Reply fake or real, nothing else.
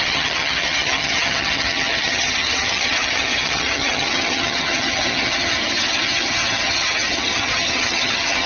fake